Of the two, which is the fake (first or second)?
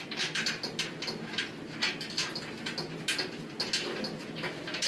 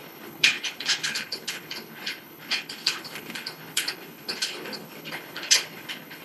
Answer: second